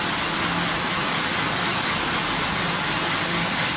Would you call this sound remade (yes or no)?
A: no